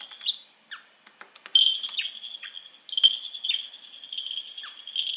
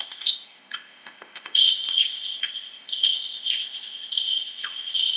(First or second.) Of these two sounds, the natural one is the first